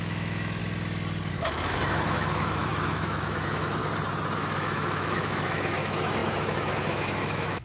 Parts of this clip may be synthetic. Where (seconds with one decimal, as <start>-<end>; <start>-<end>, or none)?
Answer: 0.0-0.6; 1.3-3.8; 4.4-7.6